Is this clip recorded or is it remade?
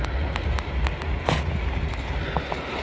recorded